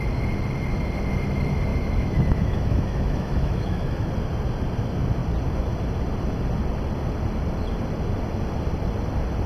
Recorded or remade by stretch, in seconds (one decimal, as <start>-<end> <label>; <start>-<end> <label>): 0.0-1.7 recorded; 1.7-4.1 remade; 4.1-9.5 recorded